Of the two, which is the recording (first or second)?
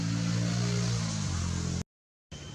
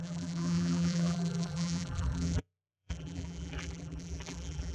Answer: first